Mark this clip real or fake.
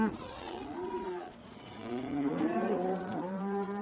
fake